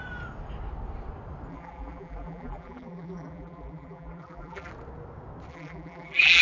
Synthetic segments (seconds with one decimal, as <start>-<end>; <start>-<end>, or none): 1.5-4.7; 5.5-6.4